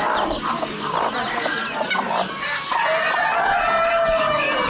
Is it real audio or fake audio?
real